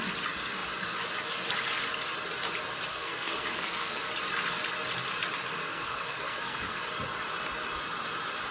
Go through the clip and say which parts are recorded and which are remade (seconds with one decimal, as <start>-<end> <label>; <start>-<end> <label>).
0.0-2.9 recorded; 2.9-4.1 remade; 4.1-5.6 recorded; 5.6-6.8 remade; 6.8-8.5 recorded